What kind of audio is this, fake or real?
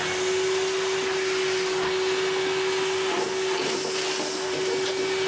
real